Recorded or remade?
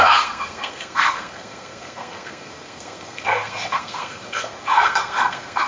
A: remade